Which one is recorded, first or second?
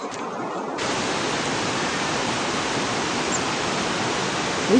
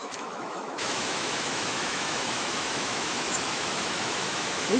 first